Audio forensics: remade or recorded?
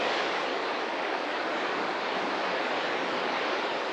remade